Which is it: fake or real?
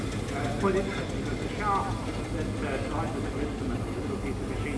real